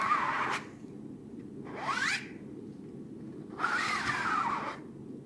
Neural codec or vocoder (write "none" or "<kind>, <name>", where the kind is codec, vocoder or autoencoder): none